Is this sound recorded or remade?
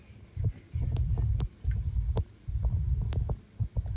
recorded